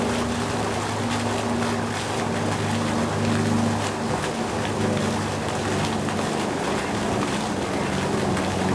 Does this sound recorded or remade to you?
recorded